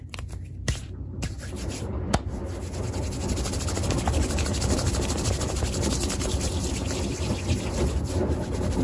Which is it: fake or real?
real